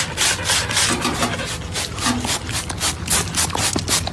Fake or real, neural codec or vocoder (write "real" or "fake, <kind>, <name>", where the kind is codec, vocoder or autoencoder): real